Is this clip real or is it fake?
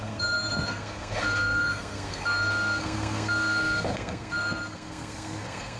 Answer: fake